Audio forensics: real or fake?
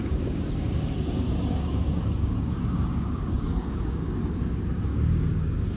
fake